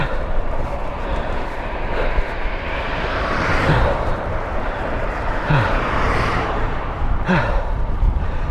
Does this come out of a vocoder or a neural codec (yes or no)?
yes